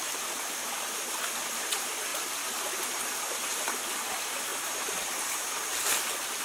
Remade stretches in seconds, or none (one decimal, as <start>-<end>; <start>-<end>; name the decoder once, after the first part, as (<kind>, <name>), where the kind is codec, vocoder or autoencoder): 4.5-5.5 (vocoder, BigVGAN v2)